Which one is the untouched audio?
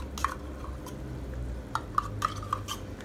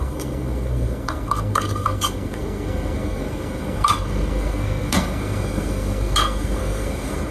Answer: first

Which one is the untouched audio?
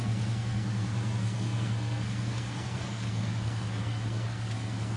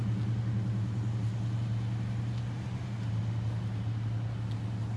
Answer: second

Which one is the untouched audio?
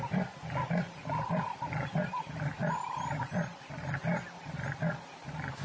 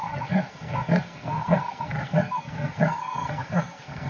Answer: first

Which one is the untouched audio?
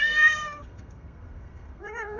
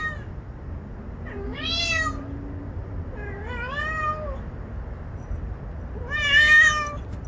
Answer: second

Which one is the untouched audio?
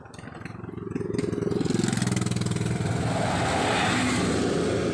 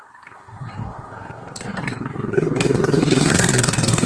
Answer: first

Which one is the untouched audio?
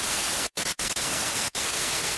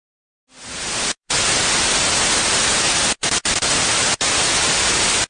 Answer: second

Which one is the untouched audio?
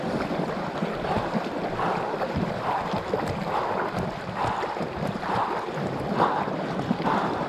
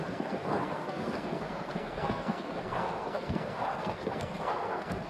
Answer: first